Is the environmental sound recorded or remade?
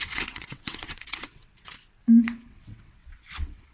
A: remade